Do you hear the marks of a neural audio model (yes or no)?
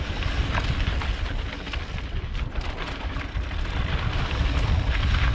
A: yes